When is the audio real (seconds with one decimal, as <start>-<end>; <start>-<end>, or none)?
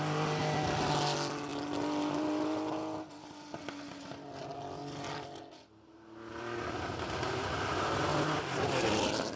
0.0-9.4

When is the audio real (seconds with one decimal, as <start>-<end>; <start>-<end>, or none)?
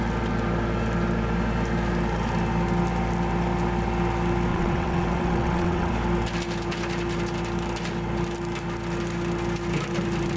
0.0-4.5; 5.9-10.4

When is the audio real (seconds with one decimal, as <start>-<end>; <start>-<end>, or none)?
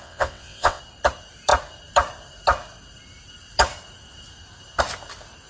0.8-5.5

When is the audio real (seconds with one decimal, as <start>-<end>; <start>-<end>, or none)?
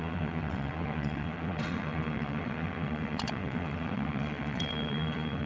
none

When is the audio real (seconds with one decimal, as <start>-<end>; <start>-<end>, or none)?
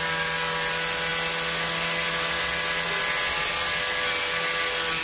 0.0-5.0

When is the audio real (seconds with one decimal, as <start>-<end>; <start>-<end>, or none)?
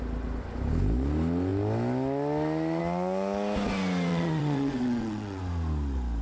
0.0-4.1; 5.4-6.2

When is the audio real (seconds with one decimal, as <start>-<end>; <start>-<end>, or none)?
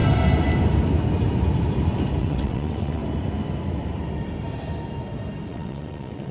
0.0-2.2; 3.0-5.5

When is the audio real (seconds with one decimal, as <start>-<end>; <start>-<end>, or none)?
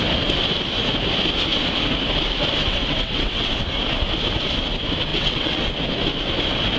0.0-2.6; 3.5-5.1; 5.6-6.8